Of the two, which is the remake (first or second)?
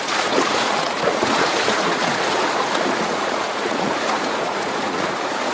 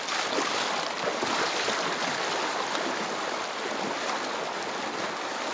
first